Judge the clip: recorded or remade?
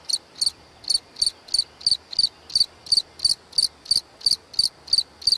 recorded